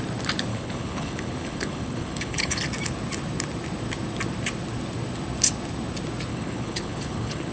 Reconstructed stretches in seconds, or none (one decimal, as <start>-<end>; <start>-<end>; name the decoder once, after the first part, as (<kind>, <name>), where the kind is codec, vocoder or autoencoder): 0.5-2.6 (codec, HILCodec); 6.3-7.5